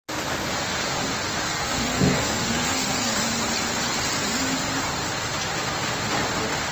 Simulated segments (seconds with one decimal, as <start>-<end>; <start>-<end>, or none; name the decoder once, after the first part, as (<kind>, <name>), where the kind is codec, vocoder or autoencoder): 1.5-3.1 (codec, SNAC)